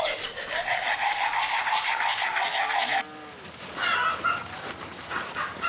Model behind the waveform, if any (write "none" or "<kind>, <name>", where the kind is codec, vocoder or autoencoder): none